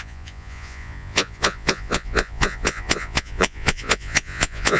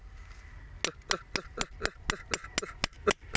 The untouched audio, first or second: second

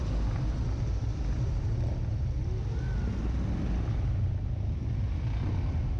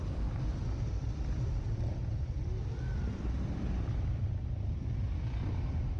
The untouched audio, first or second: first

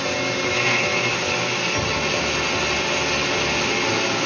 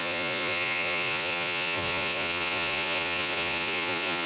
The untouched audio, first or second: first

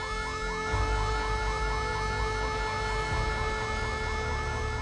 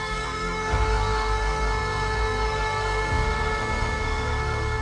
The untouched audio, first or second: first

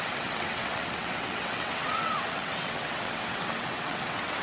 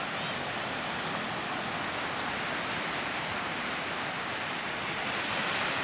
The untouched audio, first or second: second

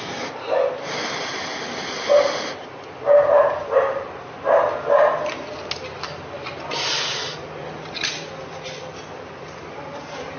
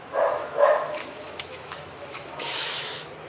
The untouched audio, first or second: first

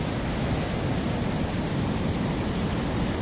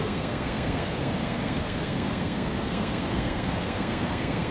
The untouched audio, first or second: first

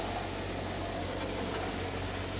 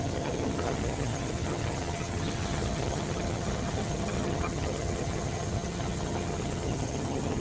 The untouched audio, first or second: first